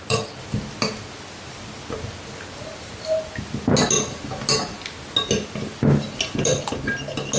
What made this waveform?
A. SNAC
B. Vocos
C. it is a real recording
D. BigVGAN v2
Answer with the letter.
C